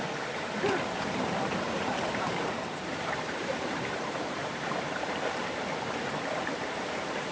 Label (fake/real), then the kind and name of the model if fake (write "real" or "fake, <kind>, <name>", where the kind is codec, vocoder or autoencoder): fake, vocoder, BigVGAN v2